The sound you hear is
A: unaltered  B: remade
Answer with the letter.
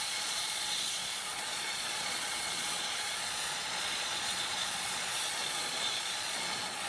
B